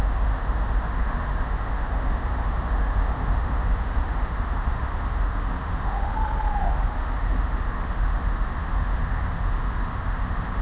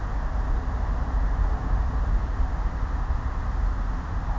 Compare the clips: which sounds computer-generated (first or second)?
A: first